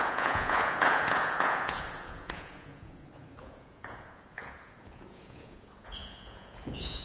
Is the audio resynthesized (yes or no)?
yes